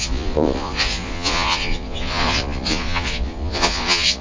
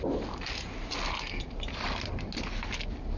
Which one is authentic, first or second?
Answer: second